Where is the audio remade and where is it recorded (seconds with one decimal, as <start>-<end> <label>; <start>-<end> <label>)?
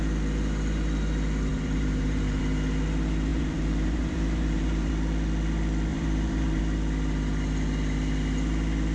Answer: 0.0-1.5 recorded; 1.5-2.4 remade; 2.4-3.3 recorded; 3.3-4.9 remade; 4.9-5.9 recorded; 5.9-6.6 remade; 6.6-8.9 recorded